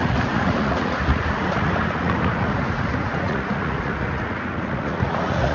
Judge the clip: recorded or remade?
remade